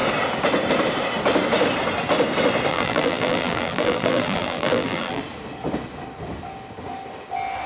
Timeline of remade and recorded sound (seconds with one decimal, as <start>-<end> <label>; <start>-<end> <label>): 0.0-2.7 recorded; 2.7-5.2 remade; 5.2-7.7 recorded